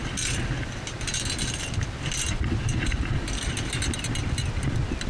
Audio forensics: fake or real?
real